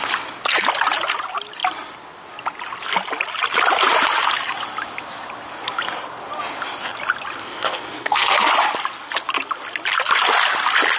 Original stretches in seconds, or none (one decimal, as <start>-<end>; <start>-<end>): 0.0-7.4; 8.5-11.0